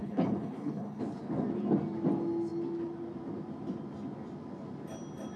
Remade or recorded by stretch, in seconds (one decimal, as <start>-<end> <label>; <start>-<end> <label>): 0.0-1.0 remade; 1.0-5.4 recorded